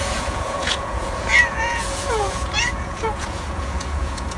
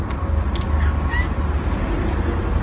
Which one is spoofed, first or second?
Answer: first